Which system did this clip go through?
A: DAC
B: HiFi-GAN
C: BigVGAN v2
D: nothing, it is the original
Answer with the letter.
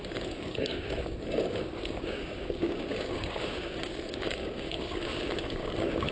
A